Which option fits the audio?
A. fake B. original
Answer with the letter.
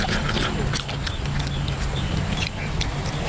B